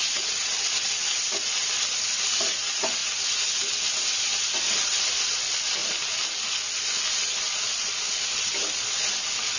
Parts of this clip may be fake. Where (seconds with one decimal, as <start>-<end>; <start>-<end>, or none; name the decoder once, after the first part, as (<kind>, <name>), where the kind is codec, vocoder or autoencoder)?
none